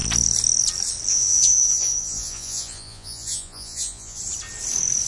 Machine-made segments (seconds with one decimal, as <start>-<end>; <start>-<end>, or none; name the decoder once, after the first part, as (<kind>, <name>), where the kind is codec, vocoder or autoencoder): 1.1-4.2 (vocoder, Vocos)